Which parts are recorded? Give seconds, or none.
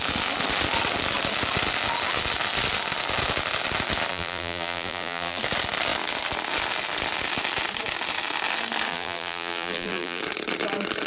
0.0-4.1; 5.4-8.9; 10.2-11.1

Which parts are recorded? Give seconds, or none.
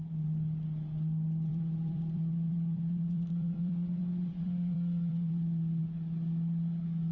0.0-1.5; 5.8-7.1